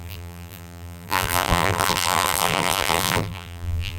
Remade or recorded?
remade